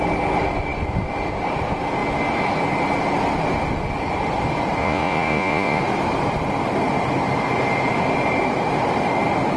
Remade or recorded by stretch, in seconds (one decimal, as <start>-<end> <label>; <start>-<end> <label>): 0.0-4.8 recorded; 4.8-5.8 remade; 5.8-9.6 recorded